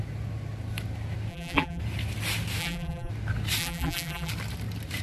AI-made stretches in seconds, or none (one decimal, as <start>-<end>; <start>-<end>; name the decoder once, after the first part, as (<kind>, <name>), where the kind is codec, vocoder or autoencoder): 1.3-1.8 (vocoder, BigVGAN v2); 2.6-3.1; 3.6-4.3

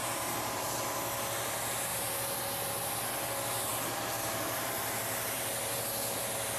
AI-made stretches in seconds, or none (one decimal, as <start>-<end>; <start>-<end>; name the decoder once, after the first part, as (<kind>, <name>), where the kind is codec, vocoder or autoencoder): 0.0-0.7 (vocoder, BigVGAN v2); 1.9-2.4; 3.7-5.5

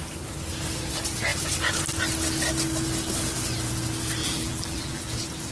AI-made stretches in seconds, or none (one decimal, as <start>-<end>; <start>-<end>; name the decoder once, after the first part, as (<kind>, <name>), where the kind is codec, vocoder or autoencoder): 4.2-5.0 (vocoder, BigVGAN v2)

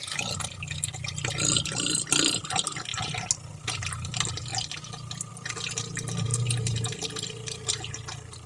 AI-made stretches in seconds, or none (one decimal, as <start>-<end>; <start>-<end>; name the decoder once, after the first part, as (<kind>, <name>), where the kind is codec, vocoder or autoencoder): 6.3-7.7 (vocoder, BigVGAN v2)

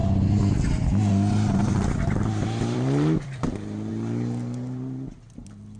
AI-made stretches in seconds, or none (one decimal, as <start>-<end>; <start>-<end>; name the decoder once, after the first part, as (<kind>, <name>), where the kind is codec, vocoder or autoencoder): 1.6-3.9 (vocoder, BigVGAN v2)

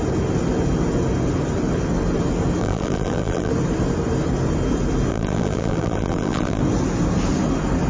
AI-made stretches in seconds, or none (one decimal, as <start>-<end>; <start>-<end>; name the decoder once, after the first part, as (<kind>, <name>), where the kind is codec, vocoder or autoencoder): 2.6-3.5 (vocoder, BigVGAN v2); 5.1-6.6

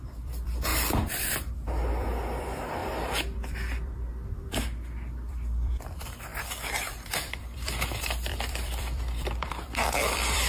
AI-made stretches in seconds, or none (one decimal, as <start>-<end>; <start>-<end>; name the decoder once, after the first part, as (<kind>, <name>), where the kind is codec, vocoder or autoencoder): 0.0-10.5 (vocoder, BigVGAN v2)

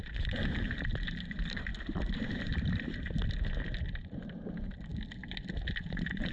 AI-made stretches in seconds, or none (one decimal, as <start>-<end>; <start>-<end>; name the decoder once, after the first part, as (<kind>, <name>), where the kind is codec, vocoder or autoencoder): 0.0-1.7 (vocoder, BigVGAN v2); 3.8-4.9; 5.8-6.3